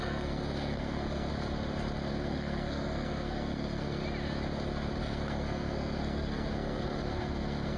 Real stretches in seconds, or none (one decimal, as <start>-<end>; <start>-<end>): 1.3-2.1; 4.0-5.0